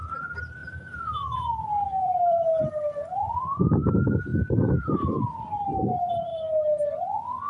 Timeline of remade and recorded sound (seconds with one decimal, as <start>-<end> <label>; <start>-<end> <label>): 0.0-0.6 recorded; 0.6-1.2 remade; 1.2-2.0 recorded; 2.0-2.6 remade; 2.6-7.5 recorded

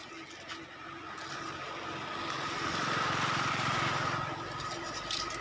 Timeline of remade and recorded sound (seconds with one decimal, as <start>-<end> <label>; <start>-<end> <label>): 0.0-5.4 recorded

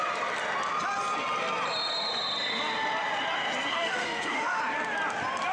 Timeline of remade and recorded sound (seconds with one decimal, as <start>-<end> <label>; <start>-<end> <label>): 0.0-3.7 recorded; 3.7-4.6 remade; 4.6-5.5 recorded

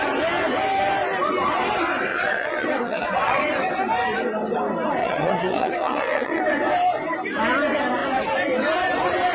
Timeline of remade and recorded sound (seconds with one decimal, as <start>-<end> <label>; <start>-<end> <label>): 0.0-2.1 recorded; 2.1-3.5 remade; 3.5-5.0 recorded; 5.0-6.4 remade; 6.4-9.3 recorded

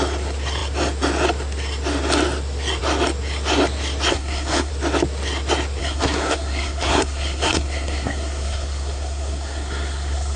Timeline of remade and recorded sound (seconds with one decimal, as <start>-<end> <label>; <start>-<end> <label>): 0.0-4.1 recorded; 4.1-4.7 remade; 4.7-5.8 recorded; 5.8-10.4 remade

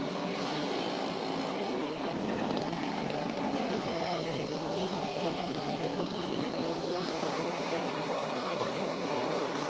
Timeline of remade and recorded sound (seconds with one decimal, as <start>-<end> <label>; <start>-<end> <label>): 0.0-0.7 remade; 0.7-1.5 recorded; 1.5-2.1 remade; 2.1-2.6 recorded; 2.6-9.7 remade

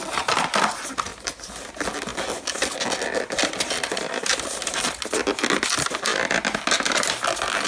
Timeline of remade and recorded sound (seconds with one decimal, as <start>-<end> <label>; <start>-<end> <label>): 0.0-7.7 recorded